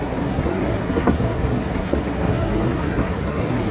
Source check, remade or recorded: remade